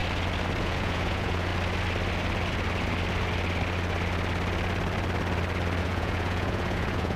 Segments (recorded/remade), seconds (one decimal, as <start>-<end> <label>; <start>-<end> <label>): 0.0-0.6 recorded; 0.6-1.5 remade; 1.5-5.8 recorded; 5.8-7.2 remade